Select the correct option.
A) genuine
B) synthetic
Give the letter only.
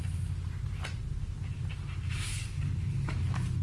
A